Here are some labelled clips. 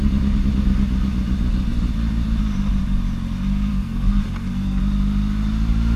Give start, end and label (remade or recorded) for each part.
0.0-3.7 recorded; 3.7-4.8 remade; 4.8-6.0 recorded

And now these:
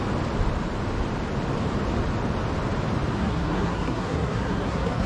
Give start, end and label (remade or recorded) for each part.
0.0-3.1 recorded; 3.1-5.1 remade

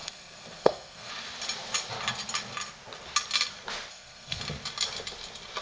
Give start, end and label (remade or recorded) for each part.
0.0-1.1 remade; 1.1-3.9 recorded; 3.9-4.4 remade; 4.4-5.6 recorded

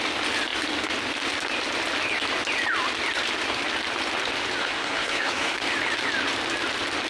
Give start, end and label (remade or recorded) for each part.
0.0-4.6 recorded; 4.6-5.6 remade; 5.6-7.1 recorded

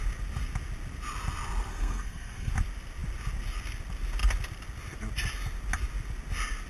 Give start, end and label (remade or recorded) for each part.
0.0-1.7 recorded; 1.7-2.5 remade; 2.5-6.7 recorded

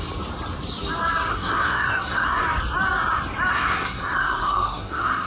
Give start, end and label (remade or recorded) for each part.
0.0-1.3 recorded; 1.3-2.4 remade; 2.4-3.5 recorded; 3.5-5.3 remade